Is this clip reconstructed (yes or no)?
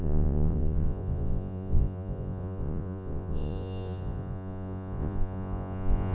yes